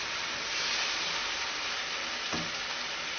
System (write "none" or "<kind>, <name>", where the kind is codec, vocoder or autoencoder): none